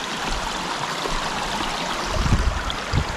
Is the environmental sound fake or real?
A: fake